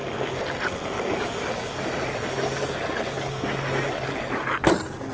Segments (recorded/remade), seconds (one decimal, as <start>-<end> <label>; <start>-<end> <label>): 0.0-5.1 recorded